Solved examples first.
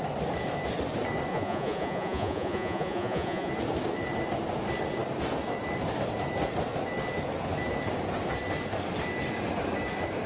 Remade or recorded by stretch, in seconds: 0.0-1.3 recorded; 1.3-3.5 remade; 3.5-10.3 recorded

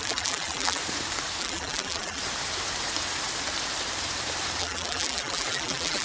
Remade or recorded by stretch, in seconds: 0.0-0.8 remade; 0.8-1.4 recorded; 1.4-2.2 remade; 2.2-4.6 recorded; 4.6-6.0 remade

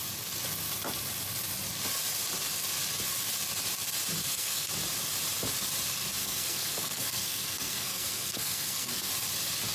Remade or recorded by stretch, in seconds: 0.0-4.2 recorded; 4.2-4.7 remade; 4.7-6.2 recorded; 6.2-9.1 remade; 9.1-9.7 recorded

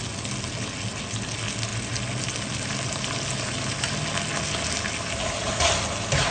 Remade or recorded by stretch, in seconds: 0.0-6.3 recorded